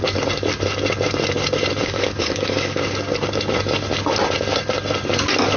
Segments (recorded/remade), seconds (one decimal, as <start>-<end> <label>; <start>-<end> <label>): 0.0-1.8 recorded; 1.8-2.8 remade; 2.8-5.6 recorded